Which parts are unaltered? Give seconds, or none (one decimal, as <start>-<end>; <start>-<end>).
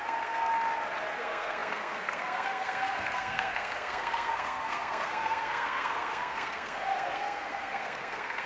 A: 0.5-1.2